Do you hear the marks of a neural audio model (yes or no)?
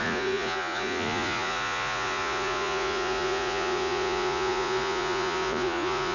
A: yes